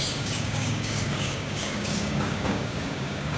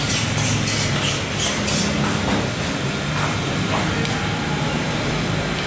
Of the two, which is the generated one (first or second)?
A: first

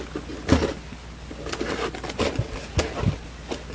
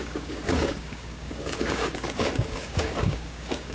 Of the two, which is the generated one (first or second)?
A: second